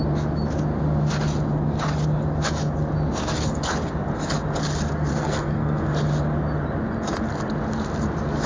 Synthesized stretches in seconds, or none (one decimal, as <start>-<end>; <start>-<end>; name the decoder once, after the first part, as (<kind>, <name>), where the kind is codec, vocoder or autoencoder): 5.1-5.8 (codec, SNAC)